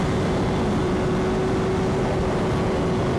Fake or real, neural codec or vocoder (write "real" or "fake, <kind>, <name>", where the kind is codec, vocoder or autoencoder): real